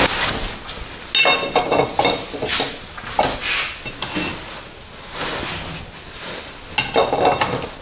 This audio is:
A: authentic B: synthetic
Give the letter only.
A